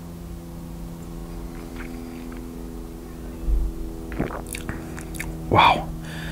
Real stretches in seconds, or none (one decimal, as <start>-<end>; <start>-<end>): 0.0-6.3